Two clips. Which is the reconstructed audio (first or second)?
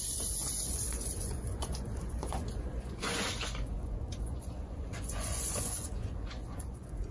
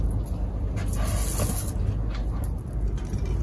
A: first